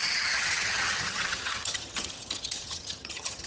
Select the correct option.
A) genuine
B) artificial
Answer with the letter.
B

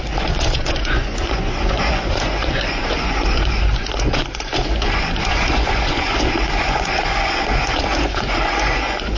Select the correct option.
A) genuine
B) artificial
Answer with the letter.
B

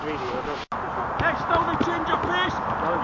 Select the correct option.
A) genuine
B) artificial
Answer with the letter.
A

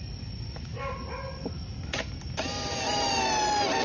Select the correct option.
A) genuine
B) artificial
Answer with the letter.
A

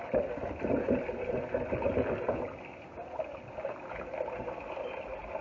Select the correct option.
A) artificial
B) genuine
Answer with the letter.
B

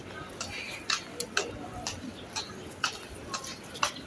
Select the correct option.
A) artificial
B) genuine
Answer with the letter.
B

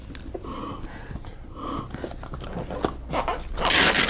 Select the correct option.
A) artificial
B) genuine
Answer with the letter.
B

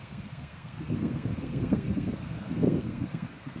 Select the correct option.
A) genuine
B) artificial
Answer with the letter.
B